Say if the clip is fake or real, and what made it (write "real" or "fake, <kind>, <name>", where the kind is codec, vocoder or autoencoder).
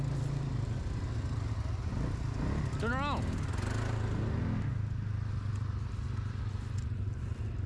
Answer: real